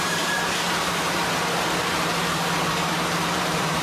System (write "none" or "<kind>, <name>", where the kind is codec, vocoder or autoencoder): vocoder, BigVGAN v2